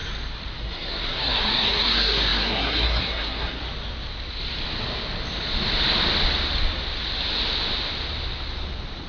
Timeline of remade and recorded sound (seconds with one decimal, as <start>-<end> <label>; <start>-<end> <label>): 0.0-0.6 recorded; 0.6-3.6 remade; 3.6-9.1 recorded